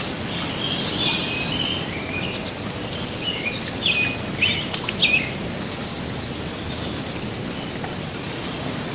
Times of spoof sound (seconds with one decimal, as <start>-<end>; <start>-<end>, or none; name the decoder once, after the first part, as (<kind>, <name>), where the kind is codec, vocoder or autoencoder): none